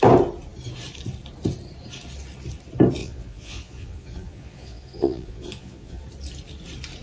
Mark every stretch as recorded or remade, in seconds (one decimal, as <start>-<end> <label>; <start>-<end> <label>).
0.0-3.0 recorded; 3.0-6.0 remade; 6.0-7.0 recorded